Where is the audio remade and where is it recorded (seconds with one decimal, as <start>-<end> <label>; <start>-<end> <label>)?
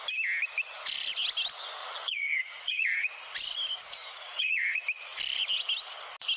0.0-1.8 recorded; 1.8-3.1 remade; 3.1-4.0 recorded; 4.0-4.8 remade; 4.8-6.4 recorded